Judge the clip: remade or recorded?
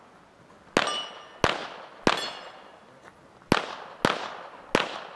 recorded